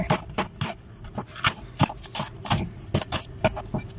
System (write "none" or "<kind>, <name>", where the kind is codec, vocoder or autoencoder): none